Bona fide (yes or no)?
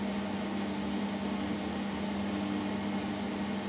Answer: yes